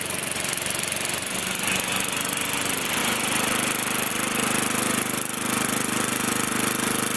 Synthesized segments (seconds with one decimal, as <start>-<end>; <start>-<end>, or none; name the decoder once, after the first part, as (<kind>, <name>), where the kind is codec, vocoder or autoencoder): none